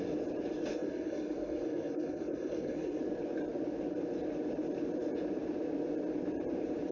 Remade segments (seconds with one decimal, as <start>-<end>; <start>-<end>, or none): 0.7-3.0